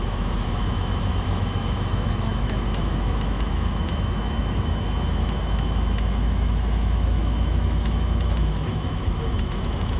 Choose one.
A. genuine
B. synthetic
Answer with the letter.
B